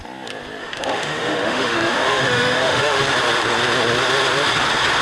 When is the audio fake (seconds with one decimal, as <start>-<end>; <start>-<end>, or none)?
0.6-3.0